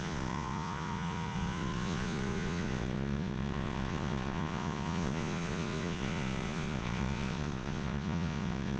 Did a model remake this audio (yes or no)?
yes